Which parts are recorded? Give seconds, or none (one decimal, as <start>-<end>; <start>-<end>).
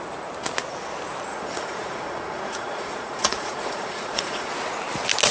0.0-1.3; 4.5-5.3